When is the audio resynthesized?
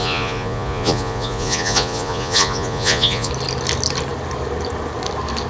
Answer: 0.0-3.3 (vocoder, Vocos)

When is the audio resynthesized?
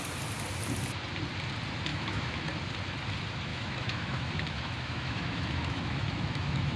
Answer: 1.9-2.4 (autoencoder, DAC-VAE); 3.5-6.8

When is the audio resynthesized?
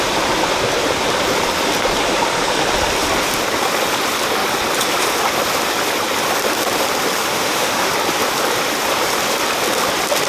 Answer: 7.3-7.9 (autoencoder, DAC-VAE)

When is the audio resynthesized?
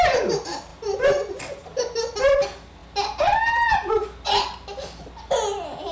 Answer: none